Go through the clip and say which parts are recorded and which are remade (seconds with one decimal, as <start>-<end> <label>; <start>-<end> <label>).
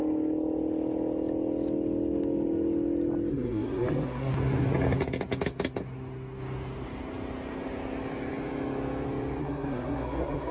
0.0-3.3 recorded; 3.3-4.3 remade; 4.3-9.4 recorded; 9.4-10.5 remade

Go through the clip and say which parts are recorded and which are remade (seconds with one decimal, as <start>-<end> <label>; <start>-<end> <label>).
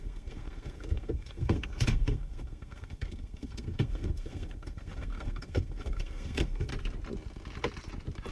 0.0-6.7 remade; 6.7-8.3 recorded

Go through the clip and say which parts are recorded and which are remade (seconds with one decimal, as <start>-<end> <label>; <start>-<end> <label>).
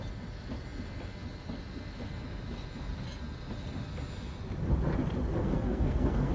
0.0-5.4 recorded; 5.4-6.3 remade